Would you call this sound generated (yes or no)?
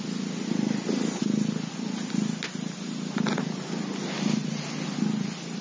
no